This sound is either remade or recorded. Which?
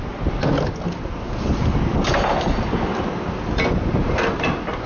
recorded